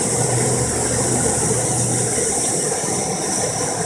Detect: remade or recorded recorded